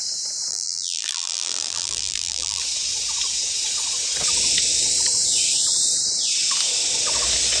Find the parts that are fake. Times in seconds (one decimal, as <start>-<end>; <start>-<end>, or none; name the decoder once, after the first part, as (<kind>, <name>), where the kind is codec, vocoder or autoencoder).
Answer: 0.5-2.6 (vocoder, BigVGAN v2)